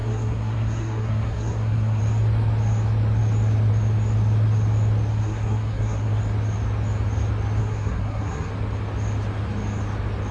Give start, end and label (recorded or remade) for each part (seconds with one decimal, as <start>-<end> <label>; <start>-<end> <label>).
0.0-2.0 remade; 2.0-5.1 recorded; 5.1-6.2 remade; 6.2-7.6 recorded; 7.6-8.5 remade; 8.5-10.3 recorded